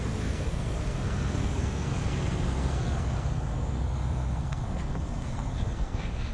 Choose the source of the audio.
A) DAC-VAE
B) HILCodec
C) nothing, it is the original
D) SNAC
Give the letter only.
D